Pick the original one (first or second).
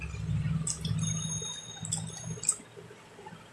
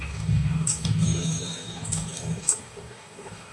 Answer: first